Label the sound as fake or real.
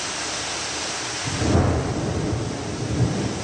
real